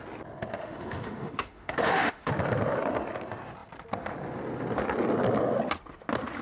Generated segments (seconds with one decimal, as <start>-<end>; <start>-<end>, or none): 0.6-2.3

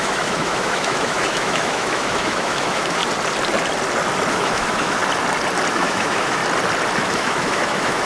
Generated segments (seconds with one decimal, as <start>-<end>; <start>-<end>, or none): 0.0-3.0; 4.3-5.0; 5.7-6.4; 7.0-8.0